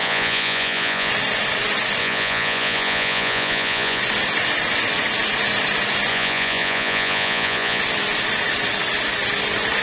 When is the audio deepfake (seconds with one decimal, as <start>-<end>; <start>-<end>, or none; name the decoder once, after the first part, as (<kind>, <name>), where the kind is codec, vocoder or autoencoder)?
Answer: 0.0-1.1 (vocoder, Vocos); 2.0-4.0; 6.1-7.8